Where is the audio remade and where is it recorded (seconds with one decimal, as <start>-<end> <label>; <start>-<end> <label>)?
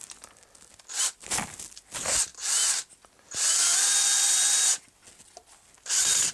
0.0-6.3 recorded